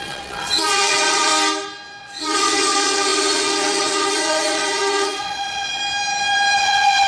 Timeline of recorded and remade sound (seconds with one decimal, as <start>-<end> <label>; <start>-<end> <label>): 0.0-1.3 remade; 1.3-2.0 recorded; 2.0-5.8 remade; 5.8-6.6 recorded; 6.6-7.1 remade